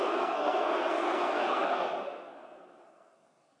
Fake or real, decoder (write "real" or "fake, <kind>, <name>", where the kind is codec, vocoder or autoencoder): fake, codec, SNAC